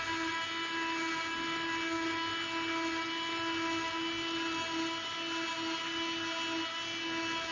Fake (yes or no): no